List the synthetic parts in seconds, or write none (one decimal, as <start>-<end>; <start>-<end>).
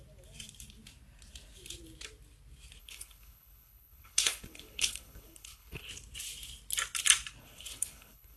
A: 2.8-5.9; 7.4-8.4